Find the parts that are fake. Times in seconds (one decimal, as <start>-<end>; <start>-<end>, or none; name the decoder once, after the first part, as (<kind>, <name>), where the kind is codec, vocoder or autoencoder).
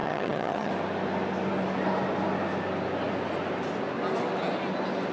0.0-0.7 (vocoder, HiFi-GAN)